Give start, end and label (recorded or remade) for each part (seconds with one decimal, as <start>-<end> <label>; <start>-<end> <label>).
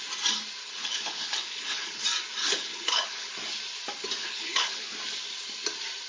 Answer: 0.0-0.6 recorded; 0.6-2.0 remade; 2.0-2.4 recorded; 2.4-3.3 remade; 3.3-4.2 recorded; 4.2-4.9 remade; 4.9-6.1 recorded